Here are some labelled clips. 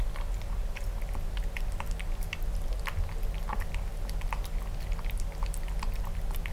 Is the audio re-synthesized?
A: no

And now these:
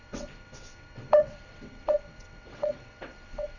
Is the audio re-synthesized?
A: yes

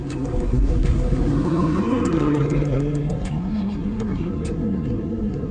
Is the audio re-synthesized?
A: yes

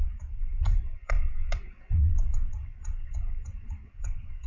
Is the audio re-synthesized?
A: yes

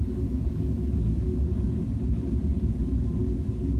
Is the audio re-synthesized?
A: yes